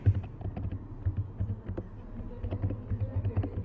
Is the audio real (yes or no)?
yes